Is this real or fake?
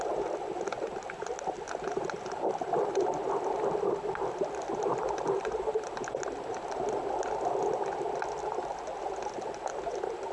fake